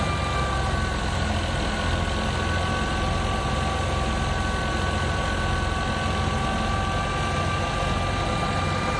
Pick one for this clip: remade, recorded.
recorded